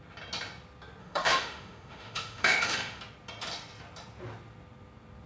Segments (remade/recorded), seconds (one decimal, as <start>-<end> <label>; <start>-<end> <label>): 0.0-1.0 recorded; 1.0-3.0 remade; 3.0-5.3 recorded